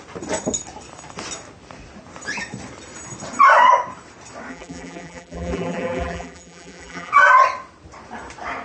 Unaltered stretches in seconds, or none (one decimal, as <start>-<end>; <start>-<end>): 0.0-4.5; 7.1-8.6